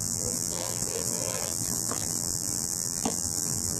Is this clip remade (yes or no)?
yes